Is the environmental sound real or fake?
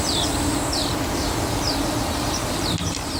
fake